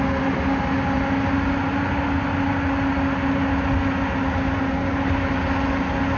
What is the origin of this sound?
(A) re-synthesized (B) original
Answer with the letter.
B